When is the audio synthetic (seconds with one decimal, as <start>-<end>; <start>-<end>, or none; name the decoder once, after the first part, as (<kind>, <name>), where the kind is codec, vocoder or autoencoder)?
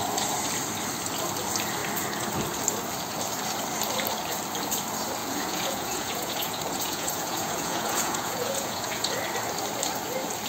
5.2-9.1 (vocoder, Vocos)